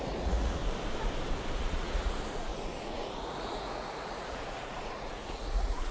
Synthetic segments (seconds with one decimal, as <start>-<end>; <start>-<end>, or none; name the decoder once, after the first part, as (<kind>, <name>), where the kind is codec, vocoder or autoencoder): 0.0-0.6 (vocoder, Vocos); 1.6-5.9